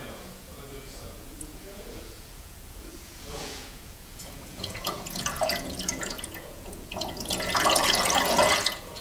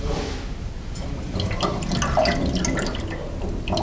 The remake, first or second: first